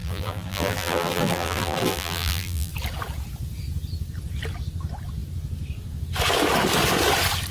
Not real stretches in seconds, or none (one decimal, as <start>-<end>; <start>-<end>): 0.0-2.7